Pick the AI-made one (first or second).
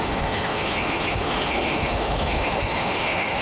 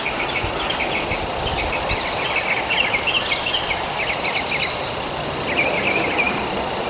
first